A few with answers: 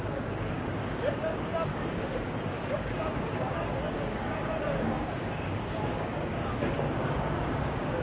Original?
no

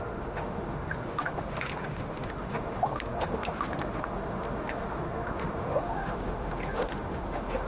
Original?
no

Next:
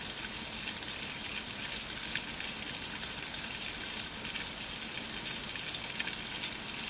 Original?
yes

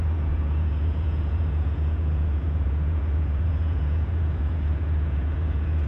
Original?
no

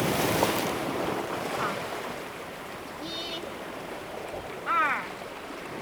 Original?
no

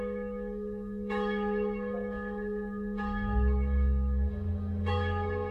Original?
no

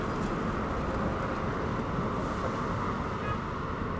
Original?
yes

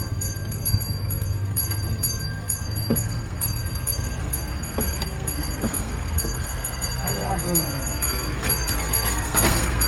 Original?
no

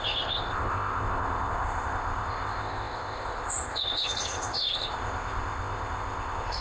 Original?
no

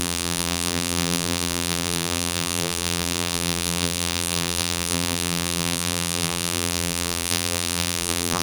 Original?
no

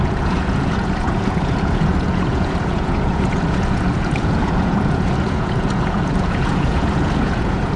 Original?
no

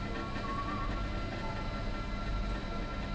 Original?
yes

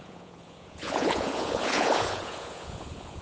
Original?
no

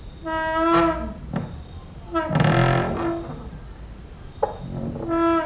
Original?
yes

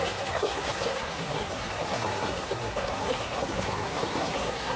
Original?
no